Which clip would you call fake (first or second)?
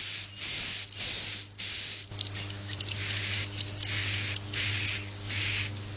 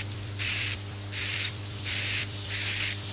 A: second